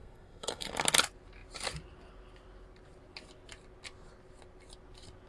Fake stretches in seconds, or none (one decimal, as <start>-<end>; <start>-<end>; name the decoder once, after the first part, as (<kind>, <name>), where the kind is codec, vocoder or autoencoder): 0.0-0.7 (codec, SNAC)